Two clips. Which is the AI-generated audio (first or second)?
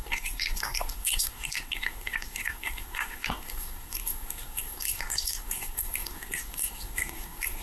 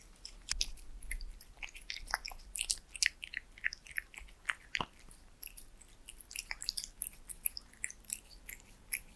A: first